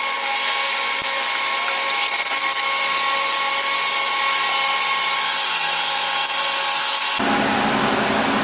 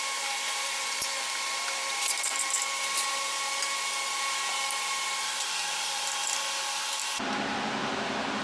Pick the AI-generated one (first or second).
second